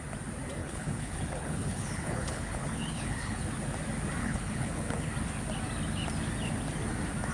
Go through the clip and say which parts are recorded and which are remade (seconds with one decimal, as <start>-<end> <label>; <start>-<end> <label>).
0.0-0.6 recorded; 0.6-3.5 remade; 3.5-4.2 recorded; 4.2-5.1 remade; 5.1-7.3 recorded